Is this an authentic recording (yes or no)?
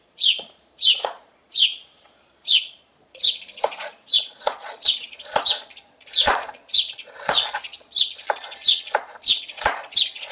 no